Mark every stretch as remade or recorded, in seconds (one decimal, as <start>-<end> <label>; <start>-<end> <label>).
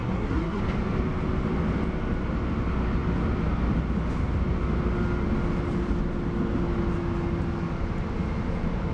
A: 0.0-0.6 remade; 0.6-8.9 recorded